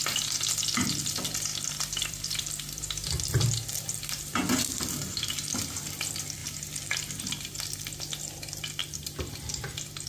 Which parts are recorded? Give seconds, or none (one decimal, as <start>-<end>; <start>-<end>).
0.0-1.5; 4.8-8.8; 9.4-10.1